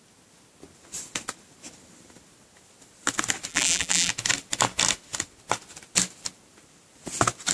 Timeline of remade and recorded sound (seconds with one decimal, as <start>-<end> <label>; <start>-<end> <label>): 0.0-3.5 recorded; 3.5-4.1 remade; 4.1-7.5 recorded